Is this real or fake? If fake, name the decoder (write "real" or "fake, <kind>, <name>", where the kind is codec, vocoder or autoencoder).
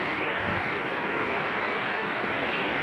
fake, codec, DAC